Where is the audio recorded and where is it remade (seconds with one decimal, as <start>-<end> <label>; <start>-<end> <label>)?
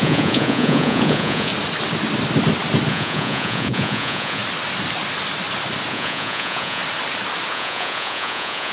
0.0-1.5 remade; 1.5-2.9 recorded; 2.9-4.4 remade; 4.4-5.9 recorded; 5.9-6.8 remade; 6.8-7.5 recorded; 7.5-8.7 remade